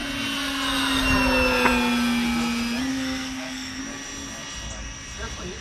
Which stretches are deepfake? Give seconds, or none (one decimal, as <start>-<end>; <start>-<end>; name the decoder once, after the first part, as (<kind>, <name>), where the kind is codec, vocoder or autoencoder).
2.9-3.8 (codec, SNAC)